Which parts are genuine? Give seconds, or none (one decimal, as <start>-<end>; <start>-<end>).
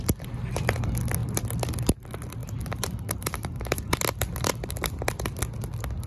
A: 0.0-2.4; 4.0-6.1